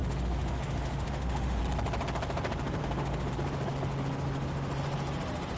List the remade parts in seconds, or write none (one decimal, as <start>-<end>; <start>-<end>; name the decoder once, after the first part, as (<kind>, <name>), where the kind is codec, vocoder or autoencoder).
0.0-1.6 (autoencoder, DAC-VAE); 2.8-3.3